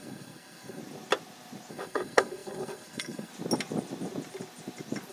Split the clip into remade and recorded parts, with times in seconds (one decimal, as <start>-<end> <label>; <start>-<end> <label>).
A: 0.0-0.8 remade; 0.8-1.7 recorded; 1.7-3.3 remade; 3.3-5.1 recorded